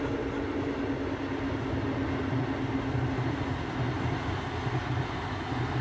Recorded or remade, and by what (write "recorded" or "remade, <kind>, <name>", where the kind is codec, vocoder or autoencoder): recorded